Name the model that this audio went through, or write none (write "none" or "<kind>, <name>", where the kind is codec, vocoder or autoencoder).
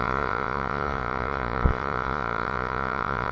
vocoder, Vocos